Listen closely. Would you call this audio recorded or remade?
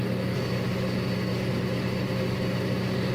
recorded